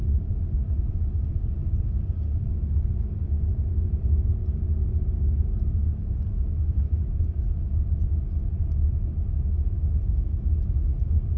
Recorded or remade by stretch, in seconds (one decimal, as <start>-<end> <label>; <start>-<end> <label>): 0.0-11.4 recorded

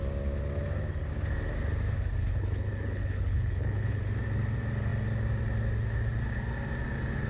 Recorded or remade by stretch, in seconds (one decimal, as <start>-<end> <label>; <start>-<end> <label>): 0.0-2.2 recorded; 2.2-4.0 remade; 4.0-7.3 recorded